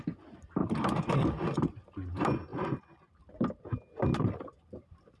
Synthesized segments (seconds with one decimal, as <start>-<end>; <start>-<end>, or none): 0.6-1.9; 4.1-5.2